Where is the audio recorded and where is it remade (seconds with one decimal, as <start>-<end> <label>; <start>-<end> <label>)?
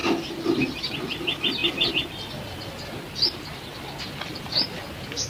0.0-5.3 recorded